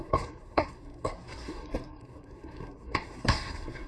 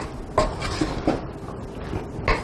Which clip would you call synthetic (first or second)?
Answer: first